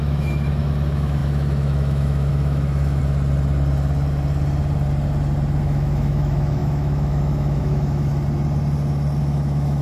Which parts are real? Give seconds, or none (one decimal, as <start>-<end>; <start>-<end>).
3.0-5.6; 8.1-9.2